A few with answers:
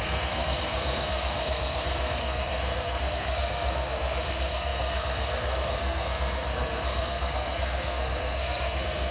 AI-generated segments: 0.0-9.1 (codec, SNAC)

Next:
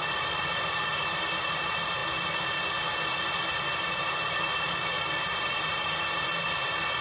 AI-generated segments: 0.0-2.0 (vocoder, BigVGAN v2); 4.4-5.7

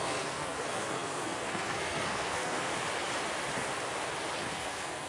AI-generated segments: 0.0-2.7 (codec, SNAC); 4.5-5.1

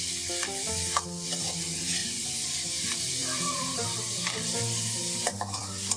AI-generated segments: 2.0-5.6 (vocoder, BigVGAN v2)

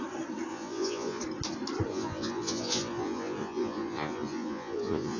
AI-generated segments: 0.5-1.2 (vocoder, Vocos); 1.9-5.2

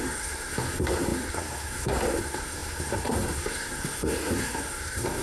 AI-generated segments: 0.0-5.2 (codec, SNAC)

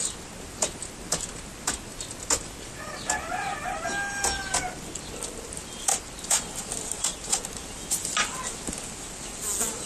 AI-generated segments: none

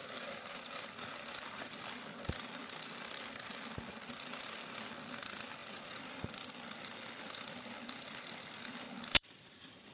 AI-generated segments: 0.0-9.9 (vocoder, BigVGAN v2)